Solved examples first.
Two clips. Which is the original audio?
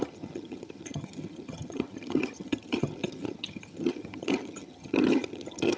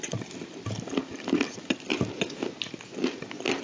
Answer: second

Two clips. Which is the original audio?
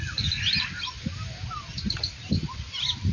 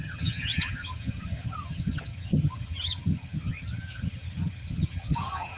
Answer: first